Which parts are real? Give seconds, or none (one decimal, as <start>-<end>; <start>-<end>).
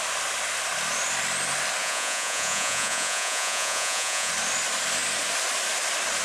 0.0-1.8; 4.3-6.2